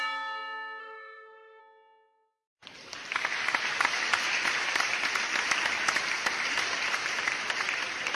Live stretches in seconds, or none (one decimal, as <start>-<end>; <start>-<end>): 0.0-0.8; 1.6-8.1